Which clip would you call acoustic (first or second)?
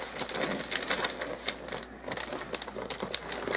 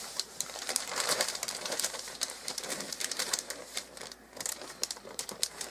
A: first